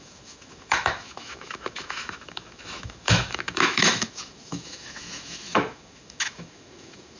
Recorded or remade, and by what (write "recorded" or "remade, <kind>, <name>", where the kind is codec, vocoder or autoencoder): remade, autoencoder, DAC-VAE